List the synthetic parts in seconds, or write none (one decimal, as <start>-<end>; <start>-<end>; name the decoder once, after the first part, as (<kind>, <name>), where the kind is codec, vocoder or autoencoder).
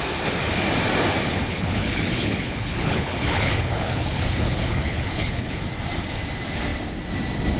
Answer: 1.3-5.6 (codec, HILCodec)